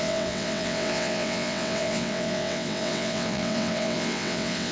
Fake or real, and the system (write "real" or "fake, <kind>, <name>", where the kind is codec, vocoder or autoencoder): fake, vocoder, WaveNeXt